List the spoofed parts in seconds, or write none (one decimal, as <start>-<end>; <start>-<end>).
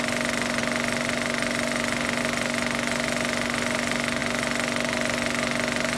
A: none